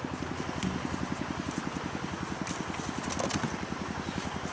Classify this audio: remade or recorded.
recorded